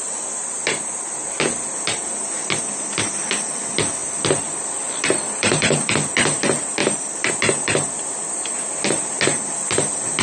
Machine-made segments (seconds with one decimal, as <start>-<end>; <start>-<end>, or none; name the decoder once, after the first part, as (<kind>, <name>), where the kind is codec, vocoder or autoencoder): 4.0-5.9 (vocoder, BigVGAN v2); 6.8-7.3